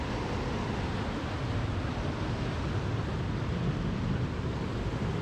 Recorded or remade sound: recorded